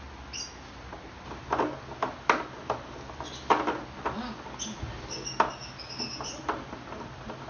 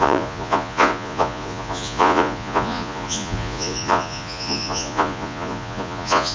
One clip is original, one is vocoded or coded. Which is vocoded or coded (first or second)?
second